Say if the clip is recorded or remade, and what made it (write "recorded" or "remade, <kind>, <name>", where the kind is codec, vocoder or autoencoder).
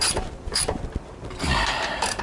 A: remade, vocoder, BigVGAN v2